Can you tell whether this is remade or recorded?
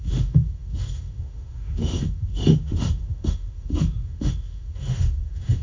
remade